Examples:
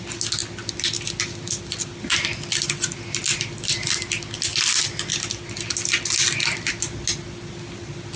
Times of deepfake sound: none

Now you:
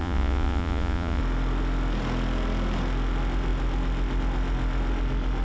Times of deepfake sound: 0.0-1.2

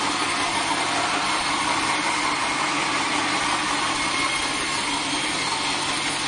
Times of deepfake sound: none

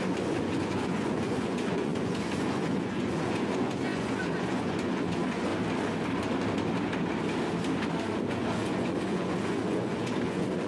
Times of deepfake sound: 0.0-5.5; 8.3-10.7

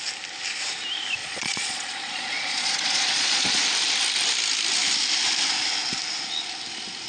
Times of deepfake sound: 1.2-3.6

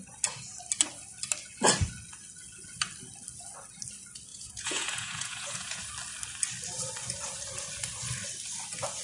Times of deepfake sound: 4.3-5.8

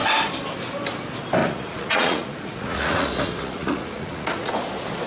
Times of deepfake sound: 1.4-4.5

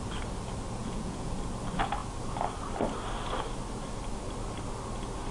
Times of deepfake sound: 0.8-1.3